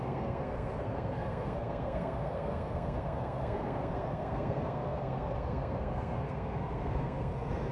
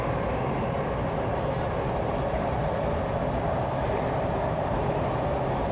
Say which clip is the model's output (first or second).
first